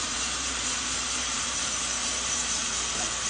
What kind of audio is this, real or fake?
fake